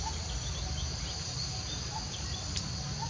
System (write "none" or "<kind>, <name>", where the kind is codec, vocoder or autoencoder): none